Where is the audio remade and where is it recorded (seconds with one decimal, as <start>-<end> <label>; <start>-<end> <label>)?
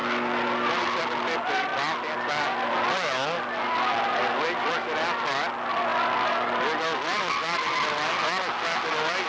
0.0-9.3 recorded